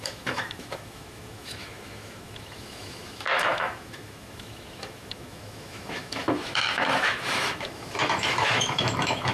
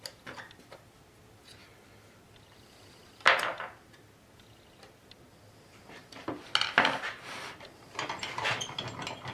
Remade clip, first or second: first